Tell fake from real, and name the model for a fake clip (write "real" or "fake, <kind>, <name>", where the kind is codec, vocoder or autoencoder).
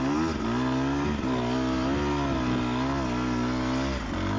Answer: real